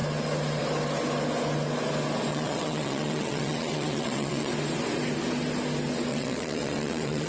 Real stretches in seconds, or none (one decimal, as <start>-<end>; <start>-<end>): 0.0-2.3; 4.5-6.1